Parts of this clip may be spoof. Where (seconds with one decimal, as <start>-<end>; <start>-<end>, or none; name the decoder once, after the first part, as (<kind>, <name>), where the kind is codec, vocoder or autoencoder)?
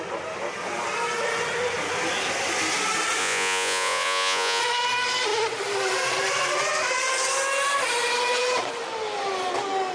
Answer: 3.2-4.6 (vocoder, Vocos)